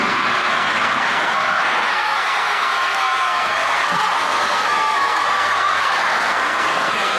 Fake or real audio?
fake